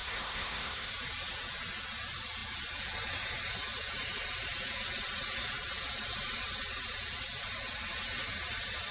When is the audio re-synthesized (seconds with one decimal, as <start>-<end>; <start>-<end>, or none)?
0.0-0.9